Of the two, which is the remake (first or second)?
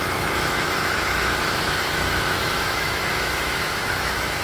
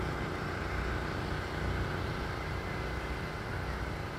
first